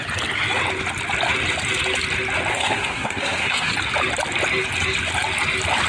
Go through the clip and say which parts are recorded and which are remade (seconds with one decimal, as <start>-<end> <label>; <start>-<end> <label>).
0.0-2.5 recorded; 2.5-3.7 remade; 3.7-5.9 recorded